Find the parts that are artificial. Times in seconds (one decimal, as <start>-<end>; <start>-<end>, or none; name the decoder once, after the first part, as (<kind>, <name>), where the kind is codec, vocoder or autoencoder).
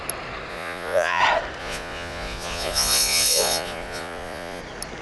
0.5-1.2 (vocoder, Vocos); 1.6-4.6